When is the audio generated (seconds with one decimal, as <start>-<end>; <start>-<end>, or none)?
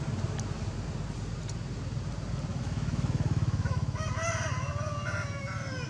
2.5-4.1